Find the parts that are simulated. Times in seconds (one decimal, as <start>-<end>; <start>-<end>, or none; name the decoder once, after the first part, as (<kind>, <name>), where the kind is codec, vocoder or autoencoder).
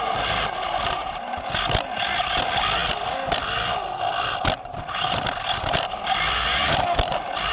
none